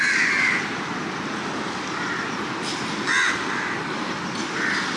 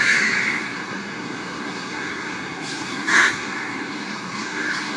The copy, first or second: second